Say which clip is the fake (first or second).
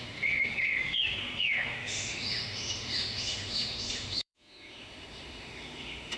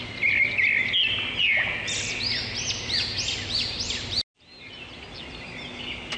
first